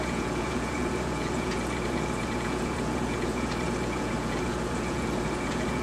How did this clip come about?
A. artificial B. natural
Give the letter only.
A